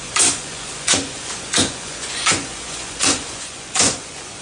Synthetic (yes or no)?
yes